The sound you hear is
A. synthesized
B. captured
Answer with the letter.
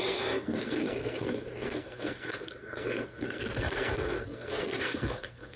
A